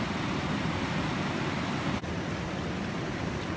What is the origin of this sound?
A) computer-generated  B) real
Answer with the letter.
A